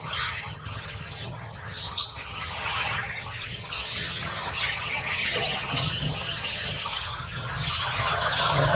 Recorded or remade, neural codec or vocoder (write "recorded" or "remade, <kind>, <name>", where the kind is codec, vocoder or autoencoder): remade, vocoder, HiFi-GAN